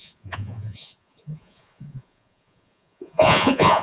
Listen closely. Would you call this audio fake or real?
fake